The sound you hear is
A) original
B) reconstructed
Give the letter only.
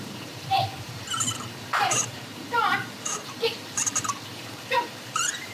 B